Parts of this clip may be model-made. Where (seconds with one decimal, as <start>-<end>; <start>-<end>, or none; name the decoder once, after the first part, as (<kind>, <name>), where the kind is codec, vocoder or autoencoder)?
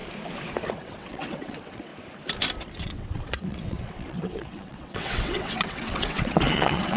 0.7-1.9 (vocoder, WaveNeXt); 2.8-7.0